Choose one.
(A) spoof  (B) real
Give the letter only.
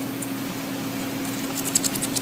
B